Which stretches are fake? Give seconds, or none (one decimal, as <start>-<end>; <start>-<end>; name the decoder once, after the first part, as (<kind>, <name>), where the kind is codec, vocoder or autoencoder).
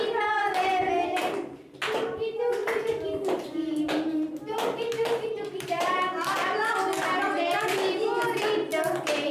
none